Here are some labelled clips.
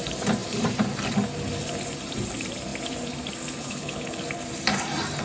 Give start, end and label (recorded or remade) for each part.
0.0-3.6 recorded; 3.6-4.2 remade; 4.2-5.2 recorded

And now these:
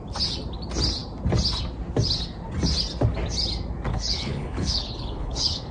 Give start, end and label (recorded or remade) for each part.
0.0-3.9 recorded; 3.9-5.7 remade